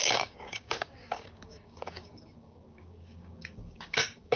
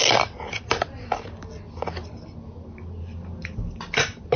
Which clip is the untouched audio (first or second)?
second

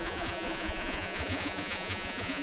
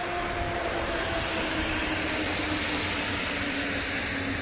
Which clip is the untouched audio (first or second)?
second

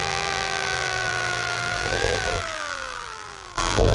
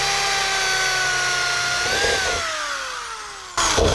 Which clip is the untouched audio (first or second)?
second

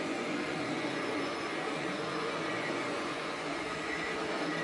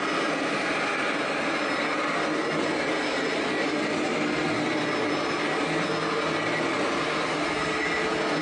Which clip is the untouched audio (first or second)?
second